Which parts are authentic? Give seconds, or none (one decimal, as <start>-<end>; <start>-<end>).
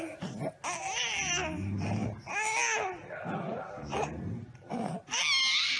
0.0-3.5; 4.1-5.8